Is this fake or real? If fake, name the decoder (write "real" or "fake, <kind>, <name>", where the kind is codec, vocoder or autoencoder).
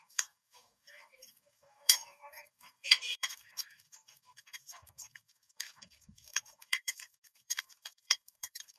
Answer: fake, codec, DAC